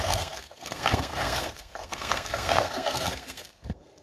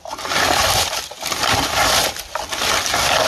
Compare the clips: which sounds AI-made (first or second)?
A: first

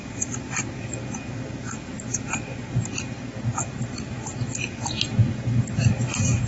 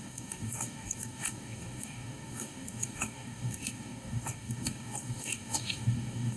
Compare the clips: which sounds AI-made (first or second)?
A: second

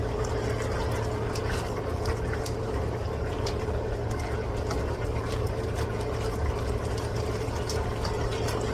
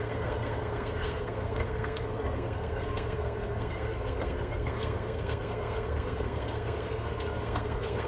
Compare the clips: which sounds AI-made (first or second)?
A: second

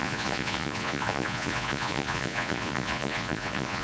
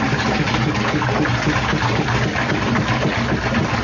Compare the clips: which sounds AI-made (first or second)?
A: first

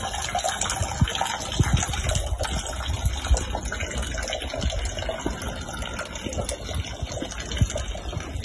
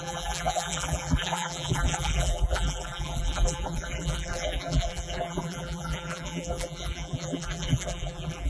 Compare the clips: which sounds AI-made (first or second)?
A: second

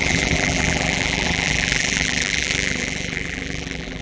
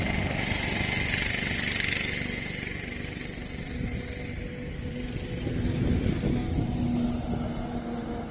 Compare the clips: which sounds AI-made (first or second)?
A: first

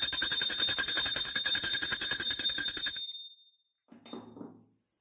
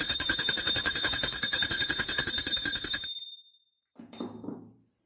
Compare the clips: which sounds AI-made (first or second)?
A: second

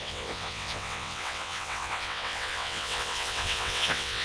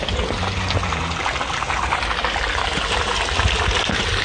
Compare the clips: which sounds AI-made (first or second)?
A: first